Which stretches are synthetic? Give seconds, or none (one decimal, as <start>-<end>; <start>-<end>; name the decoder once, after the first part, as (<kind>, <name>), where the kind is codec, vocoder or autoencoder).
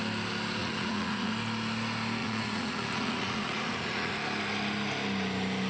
0.6-1.3 (vocoder, Vocos); 2.2-4.1